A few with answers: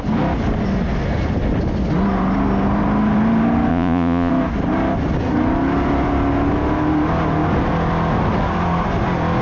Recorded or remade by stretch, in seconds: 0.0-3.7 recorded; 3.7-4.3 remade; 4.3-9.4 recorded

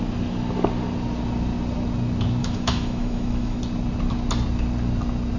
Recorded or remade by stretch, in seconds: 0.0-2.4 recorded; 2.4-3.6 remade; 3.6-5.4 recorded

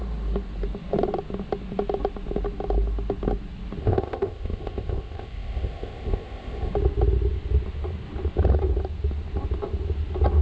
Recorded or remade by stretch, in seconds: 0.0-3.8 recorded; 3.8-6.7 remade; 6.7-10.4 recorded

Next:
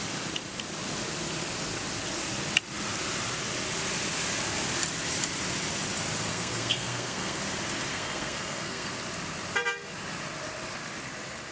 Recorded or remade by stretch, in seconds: 0.0-6.3 recorded; 6.3-7.4 remade; 7.4-7.9 recorded; 7.9-8.9 remade; 8.9-11.5 recorded

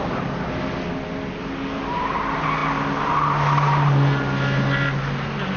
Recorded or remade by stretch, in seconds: 0.0-5.6 recorded

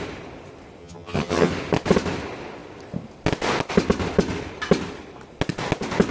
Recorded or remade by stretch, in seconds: 0.0-0.8 recorded; 0.8-1.5 remade; 1.5-6.1 recorded

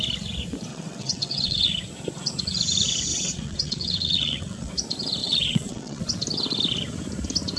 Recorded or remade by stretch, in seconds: 0.0-0.7 recorded; 0.7-1.7 remade; 1.7-3.1 recorded; 3.1-4.7 remade; 4.7-5.2 recorded; 5.2-6.0 remade; 6.0-7.6 recorded

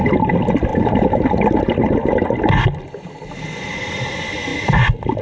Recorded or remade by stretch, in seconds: 0.0-5.2 recorded